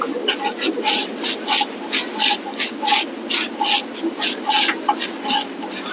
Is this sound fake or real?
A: real